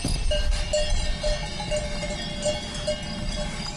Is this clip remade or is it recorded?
recorded